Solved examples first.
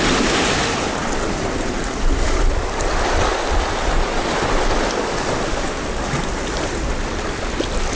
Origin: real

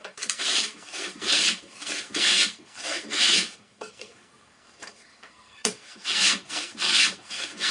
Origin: fake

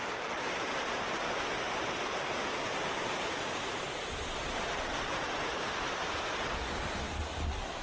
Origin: real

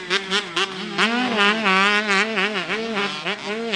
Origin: real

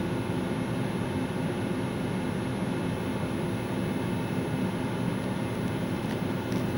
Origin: real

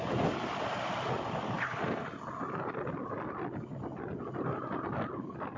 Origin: real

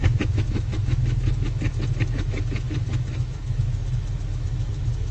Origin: fake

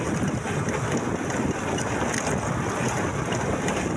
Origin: real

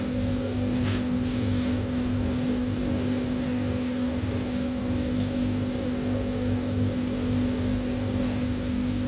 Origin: fake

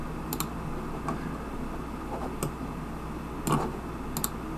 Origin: real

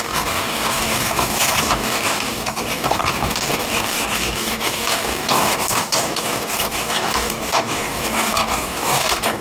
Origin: fake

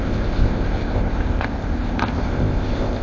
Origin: fake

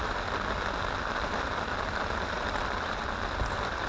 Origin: real